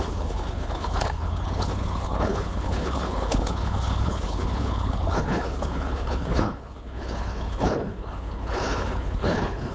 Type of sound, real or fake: fake